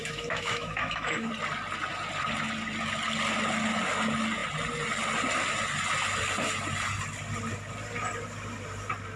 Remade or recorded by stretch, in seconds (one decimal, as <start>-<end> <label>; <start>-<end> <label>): 0.0-1.3 remade; 1.3-9.2 recorded

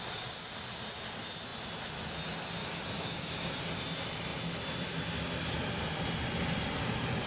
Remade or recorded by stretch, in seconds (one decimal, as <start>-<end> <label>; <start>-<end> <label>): 0.0-2.6 recorded; 2.6-3.6 remade; 3.6-7.3 recorded

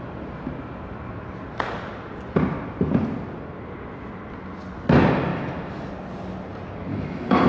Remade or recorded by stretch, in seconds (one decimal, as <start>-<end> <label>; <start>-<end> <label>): 0.0-5.3 recorded; 5.3-5.9 remade; 5.9-6.9 recorded; 6.9-7.5 remade

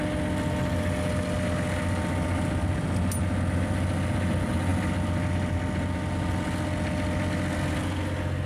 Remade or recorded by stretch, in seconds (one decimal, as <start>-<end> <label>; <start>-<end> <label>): 0.0-8.5 recorded

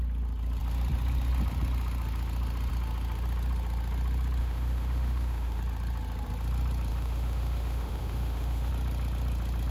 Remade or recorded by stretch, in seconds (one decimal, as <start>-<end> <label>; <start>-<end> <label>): 0.0-4.4 recorded; 4.4-5.6 remade; 5.6-6.9 recorded; 6.9-8.7 remade; 8.7-9.7 recorded